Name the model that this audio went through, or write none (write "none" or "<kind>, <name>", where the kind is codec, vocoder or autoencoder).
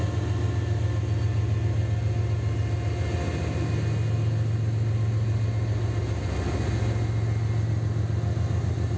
none